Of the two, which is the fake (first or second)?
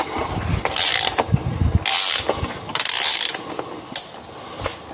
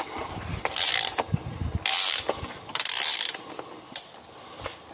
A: second